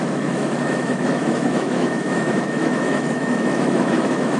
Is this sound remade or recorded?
remade